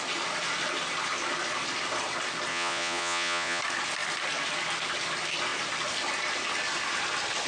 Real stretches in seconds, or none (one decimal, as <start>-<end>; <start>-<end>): 0.0-2.5; 3.6-7.5